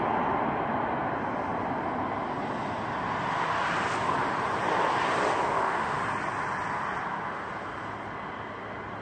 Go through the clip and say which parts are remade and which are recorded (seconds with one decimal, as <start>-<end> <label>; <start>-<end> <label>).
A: 0.0-5.5 recorded; 5.5-6.0 remade; 6.0-9.0 recorded